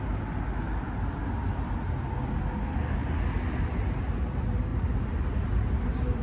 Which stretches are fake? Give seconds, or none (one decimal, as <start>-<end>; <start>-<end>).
none